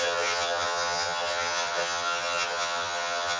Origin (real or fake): fake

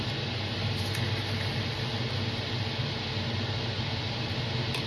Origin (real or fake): real